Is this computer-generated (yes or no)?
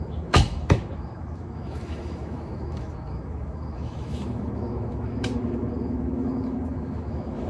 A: yes